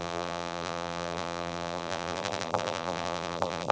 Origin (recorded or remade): remade